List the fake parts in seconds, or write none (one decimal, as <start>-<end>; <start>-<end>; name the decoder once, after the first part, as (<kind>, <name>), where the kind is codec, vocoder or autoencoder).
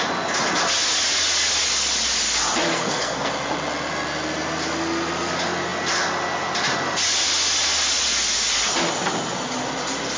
2.7-3.3 (codec, SNAC)